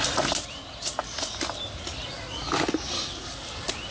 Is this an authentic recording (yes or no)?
yes